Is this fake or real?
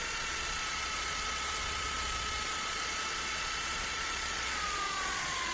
fake